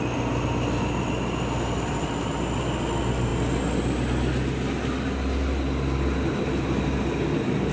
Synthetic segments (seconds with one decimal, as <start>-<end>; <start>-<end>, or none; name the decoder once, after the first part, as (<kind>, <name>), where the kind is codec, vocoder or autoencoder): none